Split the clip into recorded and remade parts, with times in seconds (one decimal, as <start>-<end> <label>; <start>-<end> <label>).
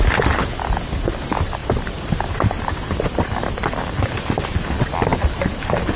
0.0-1.6 recorded; 1.6-4.6 remade; 4.6-5.1 recorded; 5.1-6.0 remade